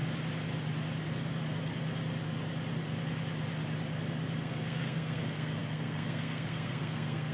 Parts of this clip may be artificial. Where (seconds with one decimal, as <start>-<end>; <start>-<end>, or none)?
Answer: 4.4-7.3